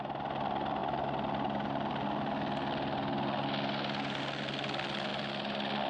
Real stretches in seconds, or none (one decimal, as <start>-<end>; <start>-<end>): 0.0-5.9